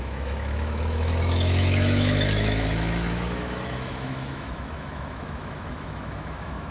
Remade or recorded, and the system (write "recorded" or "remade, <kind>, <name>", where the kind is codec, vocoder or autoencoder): remade, autoencoder, DAC-VAE